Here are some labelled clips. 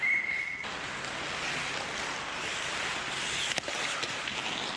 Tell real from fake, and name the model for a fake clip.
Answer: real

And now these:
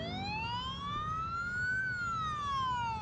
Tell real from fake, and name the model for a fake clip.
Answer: real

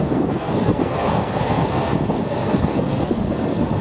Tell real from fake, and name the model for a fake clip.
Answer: fake, codec, SNAC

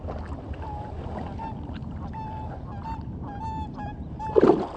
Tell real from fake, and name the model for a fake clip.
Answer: real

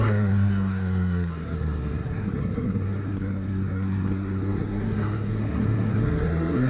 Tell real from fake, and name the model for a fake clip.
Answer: fake, codec, SNAC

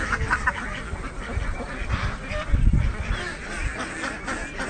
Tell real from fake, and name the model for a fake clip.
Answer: real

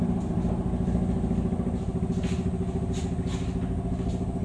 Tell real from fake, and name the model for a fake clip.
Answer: real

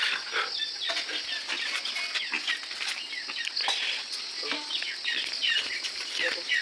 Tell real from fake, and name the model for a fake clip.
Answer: real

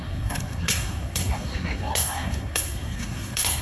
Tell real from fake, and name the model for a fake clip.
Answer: fake, codec, SNAC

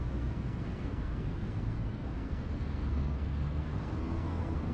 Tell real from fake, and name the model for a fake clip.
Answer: fake, codec, SNAC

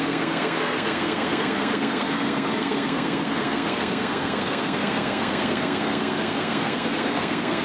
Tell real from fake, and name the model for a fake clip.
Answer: fake, codec, SNAC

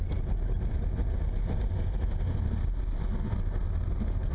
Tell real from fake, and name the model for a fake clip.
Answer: real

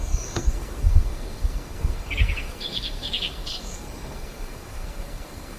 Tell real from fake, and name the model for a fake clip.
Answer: fake, codec, SNAC